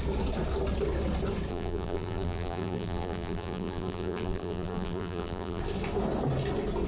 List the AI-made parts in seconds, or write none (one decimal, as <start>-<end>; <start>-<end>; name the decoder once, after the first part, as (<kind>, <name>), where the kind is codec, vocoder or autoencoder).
1.5-5.6 (vocoder, BigVGAN v2)

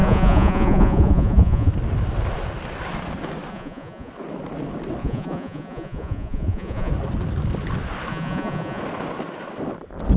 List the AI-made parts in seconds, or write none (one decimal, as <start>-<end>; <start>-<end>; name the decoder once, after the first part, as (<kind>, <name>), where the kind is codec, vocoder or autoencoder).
0.0-1.7 (vocoder, Vocos); 3.5-4.1; 5.0-6.9; 8.1-8.8

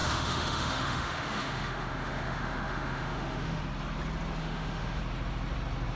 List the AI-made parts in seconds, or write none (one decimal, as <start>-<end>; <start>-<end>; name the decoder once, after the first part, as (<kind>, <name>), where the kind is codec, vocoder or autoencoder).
0.0-3.6 (autoencoder, DAC-VAE); 4.4-5.0

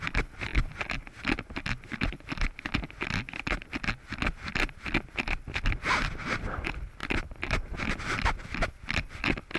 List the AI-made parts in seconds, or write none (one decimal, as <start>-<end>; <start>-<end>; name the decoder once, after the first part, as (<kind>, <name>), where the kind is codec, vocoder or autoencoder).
none

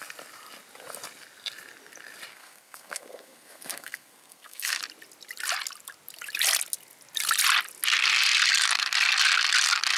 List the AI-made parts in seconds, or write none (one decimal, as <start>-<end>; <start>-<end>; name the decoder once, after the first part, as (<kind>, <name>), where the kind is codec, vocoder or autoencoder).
2.3-4.8 (codec, SNAC)

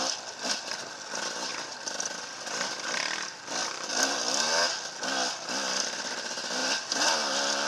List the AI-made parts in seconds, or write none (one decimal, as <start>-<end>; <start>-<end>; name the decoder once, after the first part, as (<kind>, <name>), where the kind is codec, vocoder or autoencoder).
none